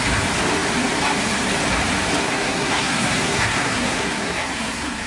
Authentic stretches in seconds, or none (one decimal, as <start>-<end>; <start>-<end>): 0.0-2.2